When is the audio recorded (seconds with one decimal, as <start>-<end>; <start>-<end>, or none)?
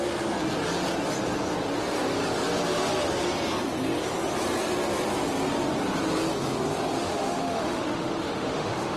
0.0-7.0